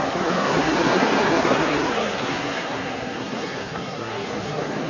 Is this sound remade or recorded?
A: remade